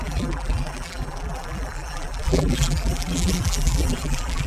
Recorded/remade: remade